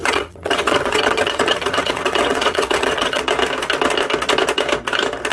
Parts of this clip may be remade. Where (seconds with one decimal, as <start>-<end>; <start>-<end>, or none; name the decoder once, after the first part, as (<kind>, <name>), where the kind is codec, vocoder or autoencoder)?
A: 0.0-3.2 (vocoder, WaveNeXt)

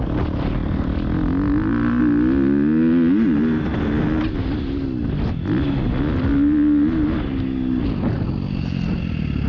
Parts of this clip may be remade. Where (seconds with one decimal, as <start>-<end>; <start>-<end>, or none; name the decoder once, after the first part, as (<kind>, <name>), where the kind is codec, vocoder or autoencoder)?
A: none

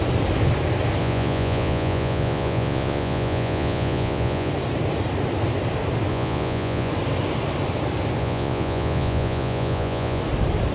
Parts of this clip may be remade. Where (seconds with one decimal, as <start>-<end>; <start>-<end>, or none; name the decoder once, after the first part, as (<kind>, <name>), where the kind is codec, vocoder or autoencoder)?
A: 1.0-4.5 (vocoder, Vocos); 6.1-6.9; 8.2-10.2

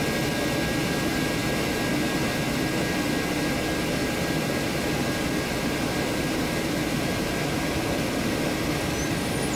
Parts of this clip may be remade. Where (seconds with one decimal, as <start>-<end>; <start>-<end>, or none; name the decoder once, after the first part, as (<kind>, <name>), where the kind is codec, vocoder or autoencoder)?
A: none

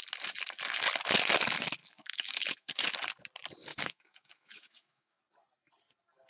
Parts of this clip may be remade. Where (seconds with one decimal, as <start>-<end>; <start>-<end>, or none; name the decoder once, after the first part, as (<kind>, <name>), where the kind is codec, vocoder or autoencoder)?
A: 1.8-2.8 (autoencoder, DAC-VAE); 3.7-5.2

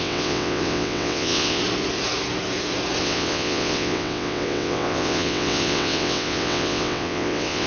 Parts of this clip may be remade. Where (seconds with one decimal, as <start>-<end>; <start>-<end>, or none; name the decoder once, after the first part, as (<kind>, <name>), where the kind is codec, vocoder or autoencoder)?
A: 0.0-1.6 (vocoder, WaveNeXt); 3.0-7.7

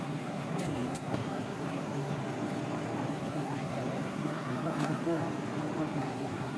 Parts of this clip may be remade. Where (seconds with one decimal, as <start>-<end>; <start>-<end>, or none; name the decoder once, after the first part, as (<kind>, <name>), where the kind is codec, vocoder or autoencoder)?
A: 0.0-2.2 (codec, SNAC); 3.1-5.2; 5.8-6.6